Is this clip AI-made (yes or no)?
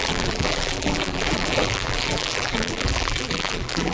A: yes